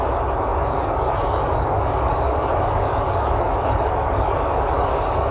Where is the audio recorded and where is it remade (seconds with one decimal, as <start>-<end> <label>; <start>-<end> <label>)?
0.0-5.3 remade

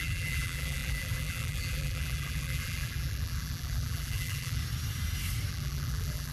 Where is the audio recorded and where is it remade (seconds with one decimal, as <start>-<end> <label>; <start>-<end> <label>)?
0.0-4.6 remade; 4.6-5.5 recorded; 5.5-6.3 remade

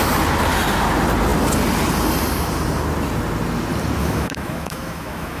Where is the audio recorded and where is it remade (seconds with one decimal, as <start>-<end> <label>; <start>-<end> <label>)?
0.0-4.0 recorded; 4.0-5.4 remade

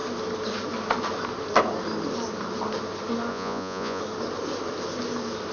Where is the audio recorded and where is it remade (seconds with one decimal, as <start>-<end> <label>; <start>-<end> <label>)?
0.0-3.3 recorded; 3.3-4.0 remade; 4.0-5.5 recorded

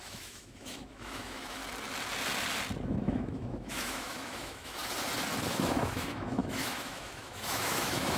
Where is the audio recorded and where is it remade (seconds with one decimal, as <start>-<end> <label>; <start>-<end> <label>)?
0.0-1.6 remade; 1.6-2.9 recorded; 2.9-4.8 remade; 4.8-5.5 recorded; 5.5-8.2 remade

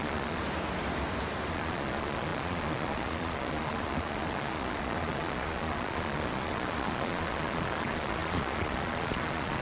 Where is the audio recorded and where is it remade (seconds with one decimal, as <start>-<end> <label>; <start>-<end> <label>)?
0.0-0.4 remade; 0.4-1.5 recorded; 1.5-9.6 remade

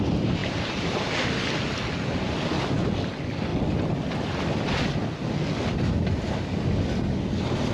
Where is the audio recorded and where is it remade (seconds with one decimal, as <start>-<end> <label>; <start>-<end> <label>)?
0.0-0.4 recorded; 0.4-1.1 remade; 1.1-7.7 recorded